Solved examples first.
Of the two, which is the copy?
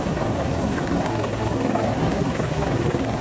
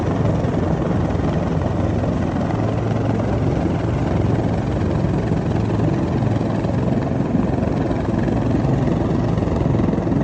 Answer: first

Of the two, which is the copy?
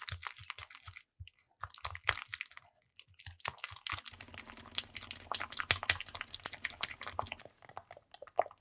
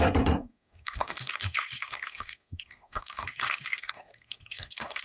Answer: second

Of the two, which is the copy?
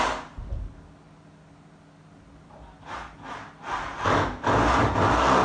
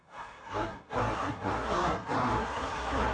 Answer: second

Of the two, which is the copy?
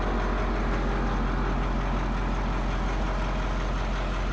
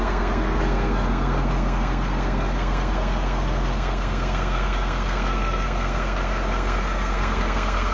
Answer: second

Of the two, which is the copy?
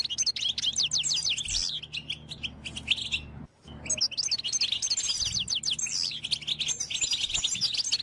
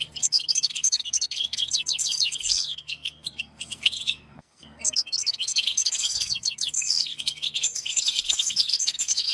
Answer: second